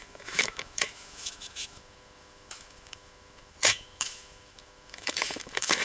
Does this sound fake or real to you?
fake